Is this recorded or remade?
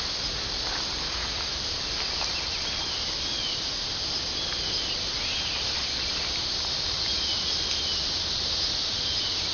recorded